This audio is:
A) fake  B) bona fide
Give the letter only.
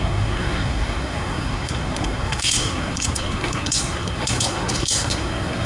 A